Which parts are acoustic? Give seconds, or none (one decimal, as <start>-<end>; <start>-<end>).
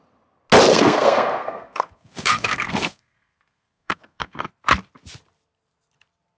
0.0-0.7; 4.5-6.4